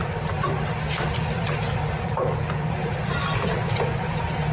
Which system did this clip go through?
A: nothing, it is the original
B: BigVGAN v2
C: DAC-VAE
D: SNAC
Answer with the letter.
B